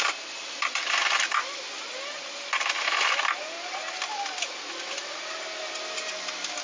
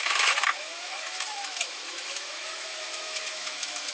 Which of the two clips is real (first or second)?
first